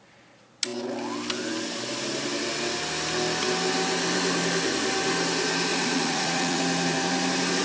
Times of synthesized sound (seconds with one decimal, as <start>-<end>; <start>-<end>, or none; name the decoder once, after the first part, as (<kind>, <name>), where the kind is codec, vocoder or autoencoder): 5.7-6.6 (vocoder, Vocos)